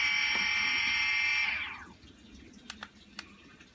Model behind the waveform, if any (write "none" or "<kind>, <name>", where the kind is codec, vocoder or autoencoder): none